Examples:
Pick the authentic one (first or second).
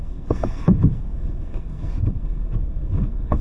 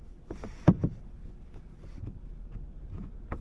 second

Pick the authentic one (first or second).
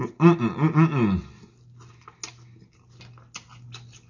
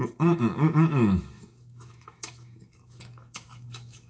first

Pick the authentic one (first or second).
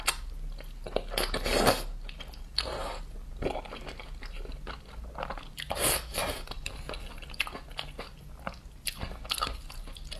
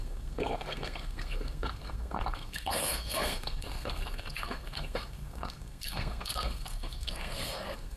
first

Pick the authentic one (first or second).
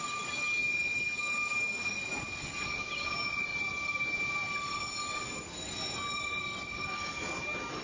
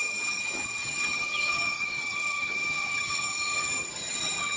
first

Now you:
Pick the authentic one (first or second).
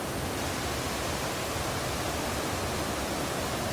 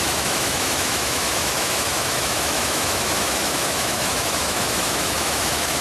first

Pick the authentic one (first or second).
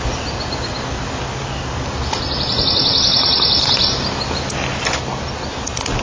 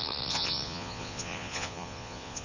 first